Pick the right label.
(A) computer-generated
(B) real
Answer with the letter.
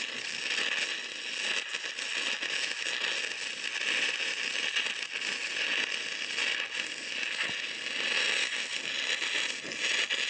B